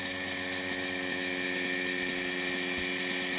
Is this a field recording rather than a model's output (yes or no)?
yes